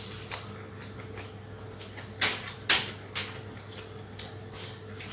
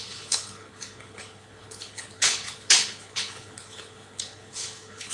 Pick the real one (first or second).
first